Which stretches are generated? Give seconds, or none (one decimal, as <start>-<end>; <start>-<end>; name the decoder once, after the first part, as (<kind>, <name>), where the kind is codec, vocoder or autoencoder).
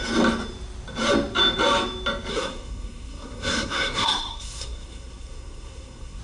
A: 2.3-6.2 (codec, SNAC)